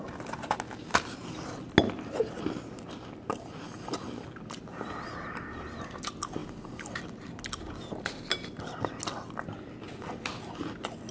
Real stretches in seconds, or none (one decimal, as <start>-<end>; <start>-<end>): 0.0-11.1